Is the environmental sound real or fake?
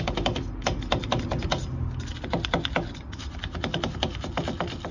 real